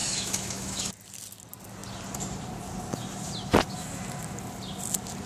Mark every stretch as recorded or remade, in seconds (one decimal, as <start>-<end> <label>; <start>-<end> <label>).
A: 0.0-0.9 remade; 0.9-5.3 recorded